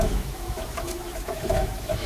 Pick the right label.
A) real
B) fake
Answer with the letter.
B